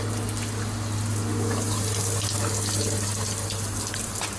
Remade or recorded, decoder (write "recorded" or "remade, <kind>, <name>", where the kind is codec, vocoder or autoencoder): recorded